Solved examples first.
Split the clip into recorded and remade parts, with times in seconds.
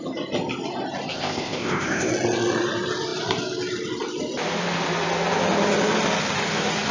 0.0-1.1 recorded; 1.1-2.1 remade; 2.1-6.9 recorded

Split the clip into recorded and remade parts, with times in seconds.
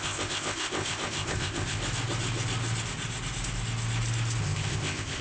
0.0-1.8 remade; 1.8-4.4 recorded; 4.4-5.2 remade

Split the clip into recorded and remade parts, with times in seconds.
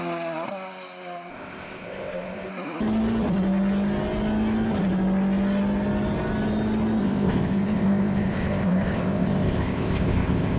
0.0-1.3 recorded; 1.3-2.5 remade; 2.5-7.0 recorded; 7.0-10.6 remade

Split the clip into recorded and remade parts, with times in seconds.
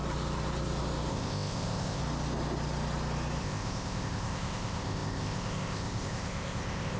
0.0-1.1 recorded; 1.1-2.0 remade; 2.0-3.4 recorded; 3.4-7.0 remade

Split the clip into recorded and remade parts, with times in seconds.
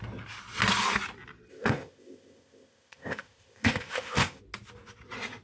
0.0-1.5 recorded; 1.5-4.4 remade; 4.4-5.4 recorded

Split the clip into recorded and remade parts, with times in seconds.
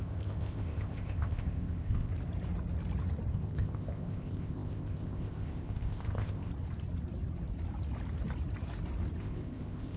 0.0-2.1 remade; 2.1-3.3 recorded; 3.3-6.5 remade; 6.5-9.2 recorded; 9.2-10.0 remade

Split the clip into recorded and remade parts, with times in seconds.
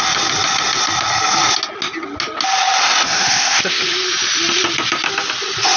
0.0-3.3 recorded; 3.3-3.8 remade; 3.8-5.8 recorded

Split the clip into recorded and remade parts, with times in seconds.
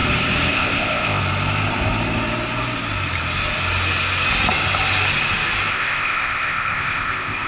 0.0-0.5 recorded; 0.5-1.2 remade; 1.2-5.7 recorded; 5.7-7.5 remade